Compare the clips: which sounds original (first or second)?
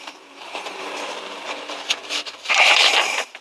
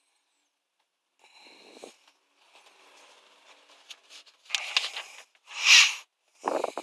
second